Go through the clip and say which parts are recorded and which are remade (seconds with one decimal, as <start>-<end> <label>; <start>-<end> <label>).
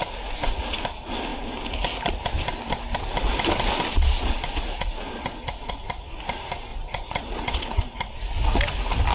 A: 0.0-3.9 recorded; 3.9-5.7 remade; 5.7-6.7 recorded; 6.7-7.8 remade; 7.8-9.1 recorded